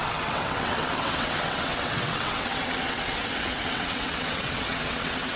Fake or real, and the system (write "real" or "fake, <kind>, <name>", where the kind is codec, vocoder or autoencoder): fake, vocoder, WaveNeXt